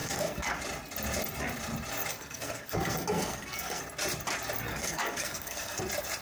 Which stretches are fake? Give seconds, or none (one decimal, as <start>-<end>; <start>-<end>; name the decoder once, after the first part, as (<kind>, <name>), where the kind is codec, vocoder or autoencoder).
0.0-0.6 (codec, SNAC); 2.1-3.8; 4.7-5.8